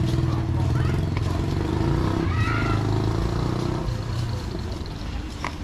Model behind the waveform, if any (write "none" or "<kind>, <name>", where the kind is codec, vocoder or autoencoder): none